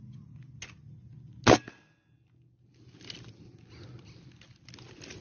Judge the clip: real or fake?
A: real